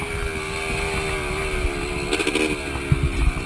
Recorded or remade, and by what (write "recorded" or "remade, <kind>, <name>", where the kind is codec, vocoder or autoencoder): recorded